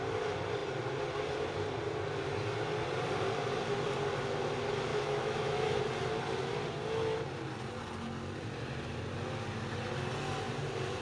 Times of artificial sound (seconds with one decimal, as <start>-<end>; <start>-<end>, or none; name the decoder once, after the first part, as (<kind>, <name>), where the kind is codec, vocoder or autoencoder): 4.9-5.8 (autoencoder, DAC-VAE)